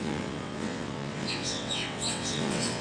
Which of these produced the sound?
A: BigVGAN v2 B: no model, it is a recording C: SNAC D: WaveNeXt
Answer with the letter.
D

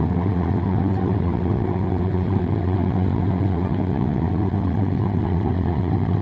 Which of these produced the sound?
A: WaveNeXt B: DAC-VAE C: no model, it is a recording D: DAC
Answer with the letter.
A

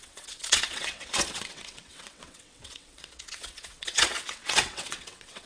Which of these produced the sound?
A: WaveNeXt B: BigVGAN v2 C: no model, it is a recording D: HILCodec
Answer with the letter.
A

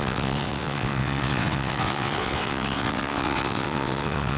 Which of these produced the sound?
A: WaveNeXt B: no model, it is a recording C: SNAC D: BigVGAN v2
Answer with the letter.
A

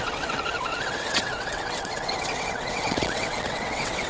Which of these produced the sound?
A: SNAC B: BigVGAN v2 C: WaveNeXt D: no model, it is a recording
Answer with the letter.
C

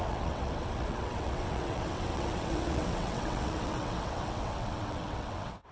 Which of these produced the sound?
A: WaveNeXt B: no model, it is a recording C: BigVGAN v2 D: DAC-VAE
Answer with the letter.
A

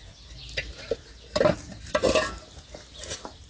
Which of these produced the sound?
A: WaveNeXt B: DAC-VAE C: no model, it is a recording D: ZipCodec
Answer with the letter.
C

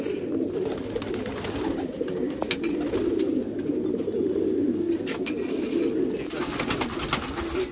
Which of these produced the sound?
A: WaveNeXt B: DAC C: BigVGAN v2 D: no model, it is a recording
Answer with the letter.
D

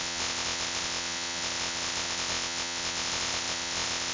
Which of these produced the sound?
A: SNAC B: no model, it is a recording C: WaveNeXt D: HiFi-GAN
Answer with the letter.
C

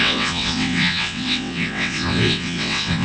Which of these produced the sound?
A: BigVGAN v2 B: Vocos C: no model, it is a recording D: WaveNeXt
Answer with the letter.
D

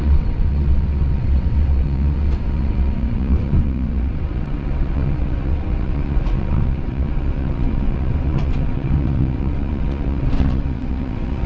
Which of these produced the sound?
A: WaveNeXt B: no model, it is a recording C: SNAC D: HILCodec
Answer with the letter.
A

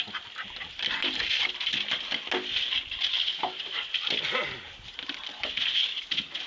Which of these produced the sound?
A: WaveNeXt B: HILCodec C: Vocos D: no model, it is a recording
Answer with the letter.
D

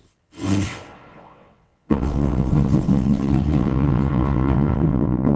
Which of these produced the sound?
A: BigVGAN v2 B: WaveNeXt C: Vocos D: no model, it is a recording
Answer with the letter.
B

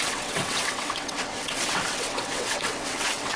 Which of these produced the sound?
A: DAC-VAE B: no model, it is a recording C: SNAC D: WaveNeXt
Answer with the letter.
D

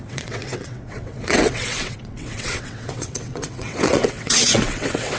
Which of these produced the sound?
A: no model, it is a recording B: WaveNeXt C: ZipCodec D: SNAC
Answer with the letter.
B